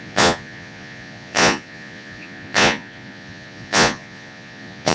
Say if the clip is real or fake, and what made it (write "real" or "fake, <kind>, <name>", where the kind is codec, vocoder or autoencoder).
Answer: fake, vocoder, Vocos